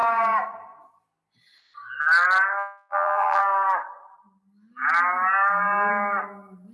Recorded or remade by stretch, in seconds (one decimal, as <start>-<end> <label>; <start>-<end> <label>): 0.0-2.9 recorded; 2.9-3.4 remade; 3.4-6.7 recorded